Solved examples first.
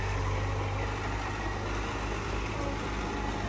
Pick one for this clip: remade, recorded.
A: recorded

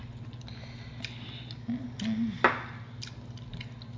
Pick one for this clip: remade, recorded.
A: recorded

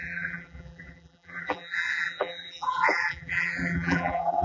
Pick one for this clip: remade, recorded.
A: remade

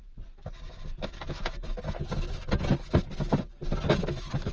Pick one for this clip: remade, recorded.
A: recorded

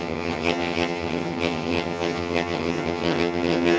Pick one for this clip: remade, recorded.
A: remade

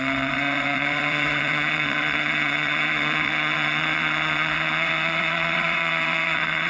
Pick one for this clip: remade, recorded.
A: remade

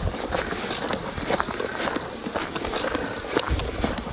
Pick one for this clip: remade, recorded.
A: recorded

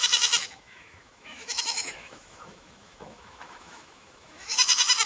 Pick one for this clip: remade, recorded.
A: remade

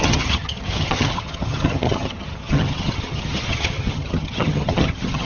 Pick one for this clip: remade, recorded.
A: remade